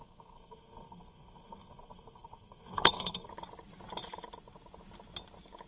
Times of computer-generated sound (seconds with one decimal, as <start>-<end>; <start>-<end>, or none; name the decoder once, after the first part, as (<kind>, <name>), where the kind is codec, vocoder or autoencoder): 0.0-3.3 (codec, SNAC)